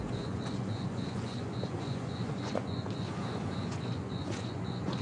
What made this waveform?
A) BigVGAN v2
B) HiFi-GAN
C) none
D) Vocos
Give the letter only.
D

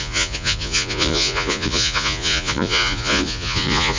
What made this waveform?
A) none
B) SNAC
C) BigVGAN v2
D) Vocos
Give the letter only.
D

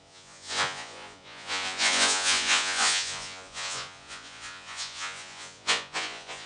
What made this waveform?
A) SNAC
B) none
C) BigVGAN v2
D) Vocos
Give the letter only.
D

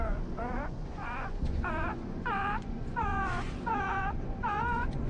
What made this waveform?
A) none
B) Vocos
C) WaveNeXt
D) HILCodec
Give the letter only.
B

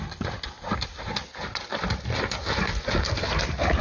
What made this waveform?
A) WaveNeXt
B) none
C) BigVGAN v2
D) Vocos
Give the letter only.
B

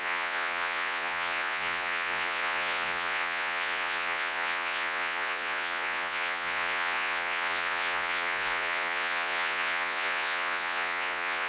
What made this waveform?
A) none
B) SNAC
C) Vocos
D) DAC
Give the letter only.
C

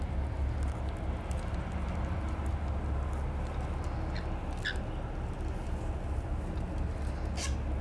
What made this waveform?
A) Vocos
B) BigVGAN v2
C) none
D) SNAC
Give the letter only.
C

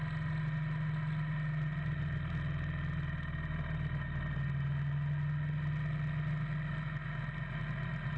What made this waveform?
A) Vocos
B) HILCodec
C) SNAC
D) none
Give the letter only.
D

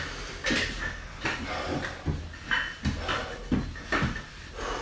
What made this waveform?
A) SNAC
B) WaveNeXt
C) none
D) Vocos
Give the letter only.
C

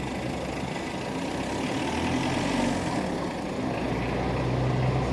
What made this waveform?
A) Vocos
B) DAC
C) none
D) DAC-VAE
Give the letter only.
C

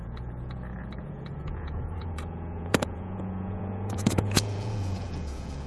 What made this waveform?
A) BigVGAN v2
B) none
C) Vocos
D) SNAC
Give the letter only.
C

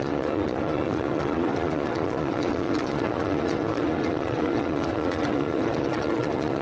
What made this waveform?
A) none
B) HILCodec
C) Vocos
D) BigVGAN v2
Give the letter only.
C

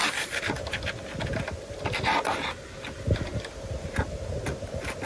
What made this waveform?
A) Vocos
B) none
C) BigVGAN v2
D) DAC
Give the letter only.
B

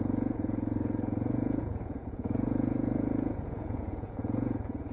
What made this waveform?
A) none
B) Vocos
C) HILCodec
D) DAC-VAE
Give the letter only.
B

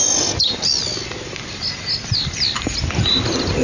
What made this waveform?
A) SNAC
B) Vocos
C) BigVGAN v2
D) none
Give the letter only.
D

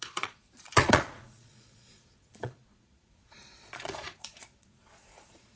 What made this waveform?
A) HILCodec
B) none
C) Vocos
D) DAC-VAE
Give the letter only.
C